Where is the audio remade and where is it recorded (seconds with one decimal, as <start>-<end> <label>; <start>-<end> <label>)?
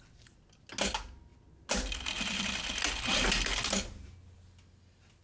0.0-5.2 recorded